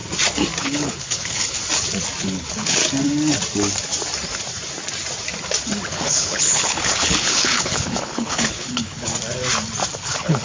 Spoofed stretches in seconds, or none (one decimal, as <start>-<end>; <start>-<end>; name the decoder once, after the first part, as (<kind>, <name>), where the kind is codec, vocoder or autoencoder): 0.6-1.6 (codec, HILCodec); 2.2-2.8; 5.9-9.1; 10.0-10.4

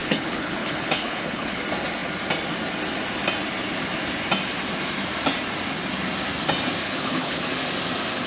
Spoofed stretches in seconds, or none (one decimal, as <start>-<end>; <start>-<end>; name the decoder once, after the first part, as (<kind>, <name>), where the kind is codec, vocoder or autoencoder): 0.0-1.6 (codec, HILCodec); 6.8-7.5

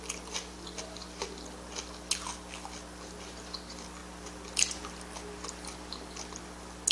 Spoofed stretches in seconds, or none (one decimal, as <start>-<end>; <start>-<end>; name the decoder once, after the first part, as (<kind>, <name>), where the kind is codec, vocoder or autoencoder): none

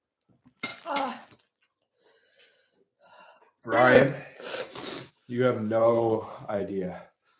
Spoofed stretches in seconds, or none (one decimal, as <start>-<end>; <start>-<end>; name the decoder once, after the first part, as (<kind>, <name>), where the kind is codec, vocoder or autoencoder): 5.8-6.6 (codec, HILCodec)

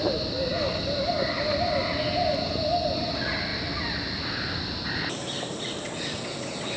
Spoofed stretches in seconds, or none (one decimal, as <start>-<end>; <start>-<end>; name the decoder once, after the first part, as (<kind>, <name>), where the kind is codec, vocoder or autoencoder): none